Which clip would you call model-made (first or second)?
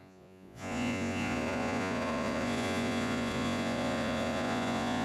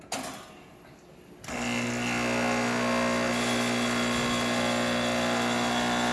first